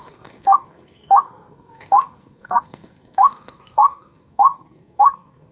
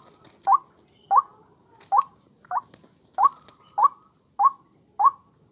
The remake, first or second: first